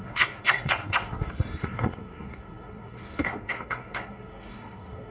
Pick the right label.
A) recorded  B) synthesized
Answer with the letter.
B